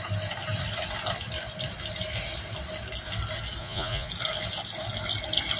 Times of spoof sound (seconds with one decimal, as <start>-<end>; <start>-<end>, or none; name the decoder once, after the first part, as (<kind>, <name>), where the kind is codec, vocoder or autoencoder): 3.6-4.1 (vocoder, Vocos)